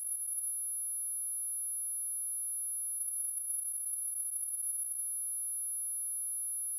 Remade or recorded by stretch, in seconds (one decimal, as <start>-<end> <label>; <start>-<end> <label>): 0.0-0.5 remade; 0.5-3.0 recorded; 3.0-5.0 remade; 5.0-6.8 recorded